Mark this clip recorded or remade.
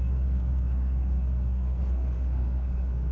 remade